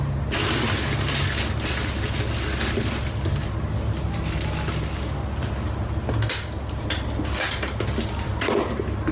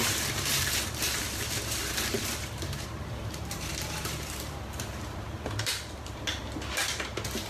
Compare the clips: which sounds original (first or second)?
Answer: first